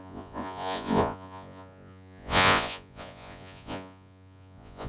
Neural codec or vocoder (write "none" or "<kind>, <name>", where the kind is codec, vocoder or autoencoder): vocoder, Vocos